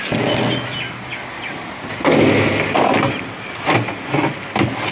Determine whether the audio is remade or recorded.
recorded